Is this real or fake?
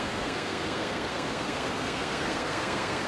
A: fake